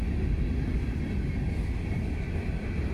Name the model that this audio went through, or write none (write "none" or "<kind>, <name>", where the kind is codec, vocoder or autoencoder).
none